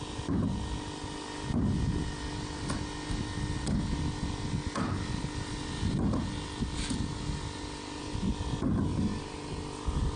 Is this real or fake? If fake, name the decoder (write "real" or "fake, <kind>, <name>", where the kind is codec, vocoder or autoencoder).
real